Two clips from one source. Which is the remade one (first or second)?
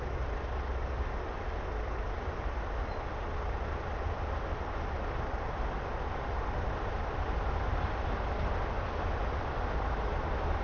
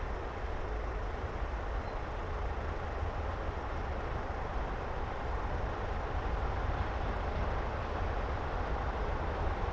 second